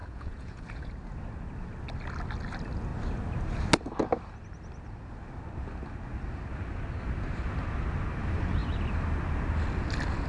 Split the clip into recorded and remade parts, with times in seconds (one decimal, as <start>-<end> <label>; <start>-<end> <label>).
0.0-0.9 remade; 0.9-10.3 recorded